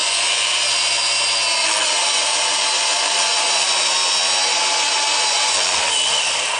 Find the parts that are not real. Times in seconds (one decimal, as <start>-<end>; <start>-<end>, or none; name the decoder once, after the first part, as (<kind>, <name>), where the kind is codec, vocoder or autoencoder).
0.0-0.5 (vocoder, Vocos); 1.6-3.9; 4.5-5.8

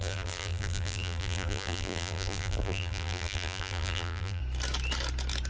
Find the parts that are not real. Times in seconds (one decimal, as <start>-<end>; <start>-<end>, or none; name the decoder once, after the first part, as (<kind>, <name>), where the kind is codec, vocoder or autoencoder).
0.0-4.4 (vocoder, BigVGAN v2)

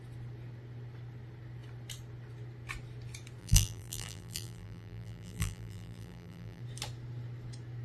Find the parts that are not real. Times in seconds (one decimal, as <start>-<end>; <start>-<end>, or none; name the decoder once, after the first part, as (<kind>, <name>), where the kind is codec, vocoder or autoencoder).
3.4-6.6 (vocoder, BigVGAN v2)

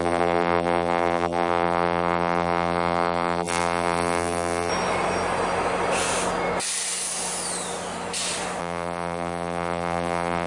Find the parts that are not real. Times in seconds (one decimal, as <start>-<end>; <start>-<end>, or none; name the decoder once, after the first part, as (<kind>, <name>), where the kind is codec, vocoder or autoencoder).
0.0-4.7 (vocoder, BigVGAN v2); 8.6-10.5

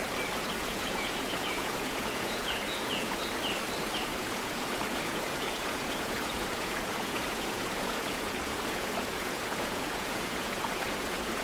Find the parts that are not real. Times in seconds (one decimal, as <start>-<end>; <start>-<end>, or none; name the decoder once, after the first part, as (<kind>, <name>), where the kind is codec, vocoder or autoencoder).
0.6-3.2 (vocoder, Vocos); 3.8-11.4

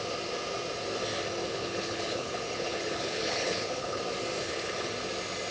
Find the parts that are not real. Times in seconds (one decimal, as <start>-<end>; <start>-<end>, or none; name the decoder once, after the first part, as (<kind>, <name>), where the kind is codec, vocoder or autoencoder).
1.4-4.0 (codec, HILCodec); 4.4-4.9

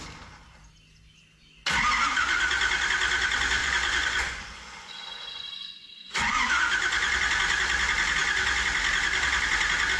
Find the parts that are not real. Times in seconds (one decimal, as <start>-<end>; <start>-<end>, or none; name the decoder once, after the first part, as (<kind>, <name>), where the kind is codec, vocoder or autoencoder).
3.6-6.6 (vocoder, Vocos)